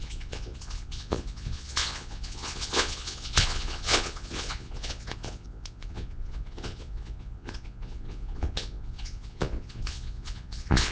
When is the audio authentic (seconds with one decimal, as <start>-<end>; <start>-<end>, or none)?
none